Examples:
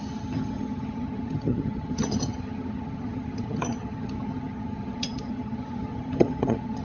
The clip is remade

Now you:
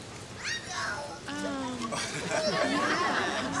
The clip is recorded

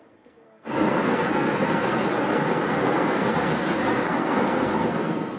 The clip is remade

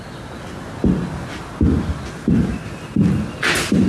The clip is recorded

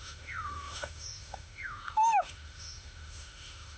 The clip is remade